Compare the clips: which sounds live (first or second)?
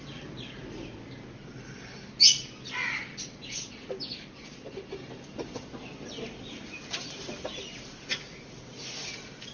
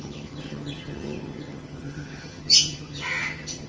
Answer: first